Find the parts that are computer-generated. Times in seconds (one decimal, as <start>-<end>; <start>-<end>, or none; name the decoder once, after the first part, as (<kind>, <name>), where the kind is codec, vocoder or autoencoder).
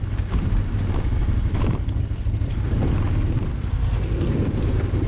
3.5-4.5 (codec, SNAC)